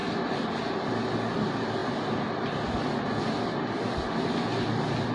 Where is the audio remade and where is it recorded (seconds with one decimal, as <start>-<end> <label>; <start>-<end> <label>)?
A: 0.0-5.1 recorded